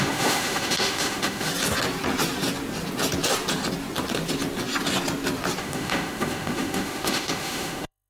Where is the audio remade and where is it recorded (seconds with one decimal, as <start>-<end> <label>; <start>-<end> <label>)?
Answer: 0.0-1.5 remade; 1.5-5.6 recorded; 5.6-8.1 remade